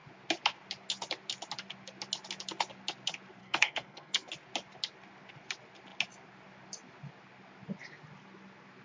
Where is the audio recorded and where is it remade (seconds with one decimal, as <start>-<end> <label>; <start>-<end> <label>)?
0.0-3.4 recorded; 3.4-4.3 remade; 4.3-8.8 recorded